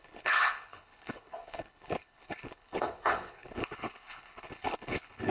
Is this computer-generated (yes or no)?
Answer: yes